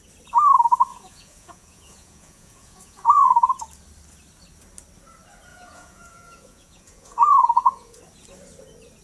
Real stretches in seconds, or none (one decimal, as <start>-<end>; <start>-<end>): 0.0-0.9; 3.5-5.5; 8.0-9.0

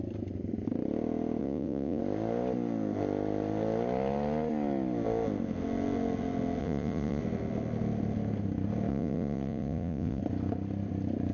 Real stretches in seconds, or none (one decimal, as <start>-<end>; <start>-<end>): 0.0-1.4; 2.0-6.6; 7.2-8.9; 10.2-11.3

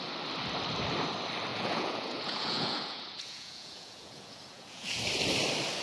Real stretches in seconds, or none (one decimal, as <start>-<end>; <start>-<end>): 0.0-1.5; 5.0-5.8

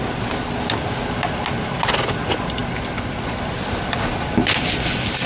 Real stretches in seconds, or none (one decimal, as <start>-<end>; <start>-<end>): 0.0-5.3

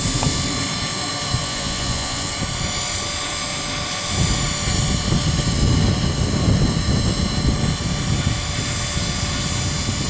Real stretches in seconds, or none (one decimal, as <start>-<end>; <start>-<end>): 0.0-1.4; 2.3-10.1

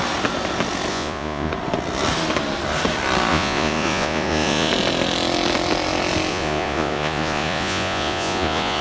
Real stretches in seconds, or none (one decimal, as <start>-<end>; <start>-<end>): 0.0-0.9; 1.5-3.3; 4.7-6.3

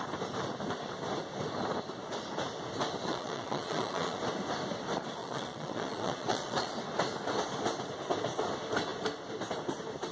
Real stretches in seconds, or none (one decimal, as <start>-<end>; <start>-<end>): 0.0-3.1; 4.2-5.2; 6.7-10.1

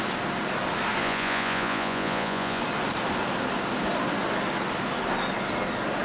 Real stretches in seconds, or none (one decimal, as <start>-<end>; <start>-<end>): 0.0-1.0; 2.6-6.0